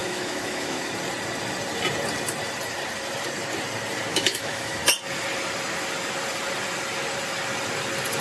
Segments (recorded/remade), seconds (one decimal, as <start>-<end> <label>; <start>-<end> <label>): 0.0-0.9 remade; 0.9-4.1 recorded; 4.1-4.8 remade; 4.8-8.2 recorded